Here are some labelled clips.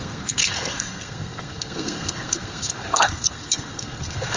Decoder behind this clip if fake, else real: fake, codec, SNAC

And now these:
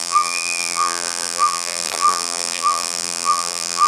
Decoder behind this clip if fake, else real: fake, vocoder, BigVGAN v2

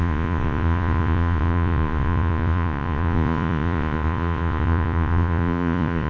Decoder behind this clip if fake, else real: fake, vocoder, Vocos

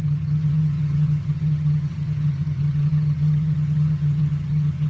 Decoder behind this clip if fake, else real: fake, vocoder, HiFi-GAN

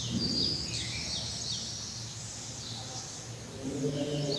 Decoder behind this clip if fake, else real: real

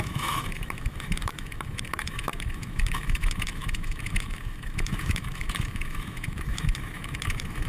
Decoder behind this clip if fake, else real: fake, autoencoder, DAC-VAE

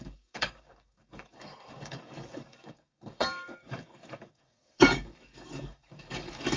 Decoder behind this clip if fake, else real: fake, codec, DAC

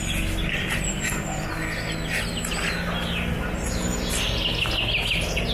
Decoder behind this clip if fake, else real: real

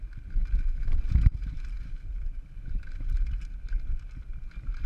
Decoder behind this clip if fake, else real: real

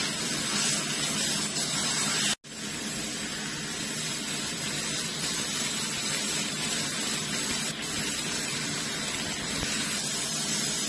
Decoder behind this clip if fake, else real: real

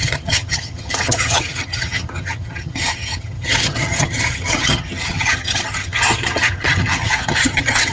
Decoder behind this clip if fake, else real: fake, vocoder, HiFi-GAN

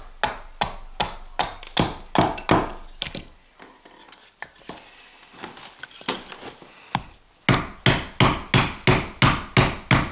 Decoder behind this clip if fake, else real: real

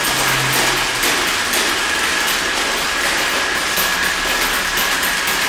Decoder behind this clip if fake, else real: real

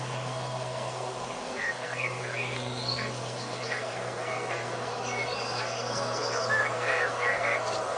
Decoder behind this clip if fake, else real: fake, codec, SNAC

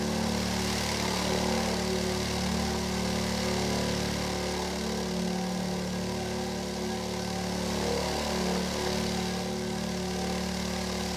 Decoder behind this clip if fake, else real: real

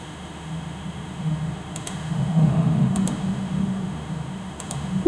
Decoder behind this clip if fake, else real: fake, autoencoder, DAC-VAE